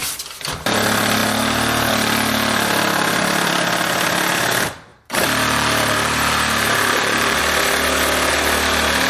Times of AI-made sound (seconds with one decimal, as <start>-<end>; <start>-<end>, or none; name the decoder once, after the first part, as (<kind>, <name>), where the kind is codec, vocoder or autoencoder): 4.9-7.4 (vocoder, BigVGAN v2)